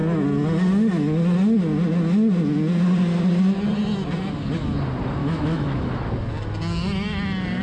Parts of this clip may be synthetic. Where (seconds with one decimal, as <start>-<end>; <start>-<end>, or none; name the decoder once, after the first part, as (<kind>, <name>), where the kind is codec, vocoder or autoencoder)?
5.2-5.9 (autoencoder, DAC-VAE)